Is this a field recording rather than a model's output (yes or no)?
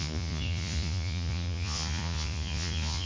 no